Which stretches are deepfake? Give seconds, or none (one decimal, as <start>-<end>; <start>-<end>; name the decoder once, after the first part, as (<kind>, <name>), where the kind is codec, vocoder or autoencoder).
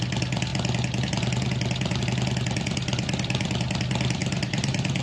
4.2-5.0 (vocoder, BigVGAN v2)